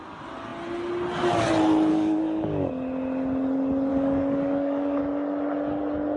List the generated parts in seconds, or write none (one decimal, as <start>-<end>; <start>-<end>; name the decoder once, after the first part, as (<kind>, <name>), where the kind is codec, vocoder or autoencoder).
1.9-2.7 (codec, DAC); 3.9-5.0